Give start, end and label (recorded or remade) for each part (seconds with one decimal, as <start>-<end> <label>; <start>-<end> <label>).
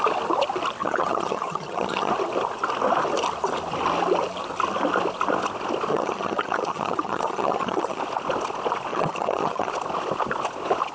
0.0-0.8 recorded; 0.8-2.1 remade; 2.1-5.9 recorded; 5.9-8.0 remade; 8.0-8.9 recorded; 8.9-9.7 remade; 9.7-10.9 recorded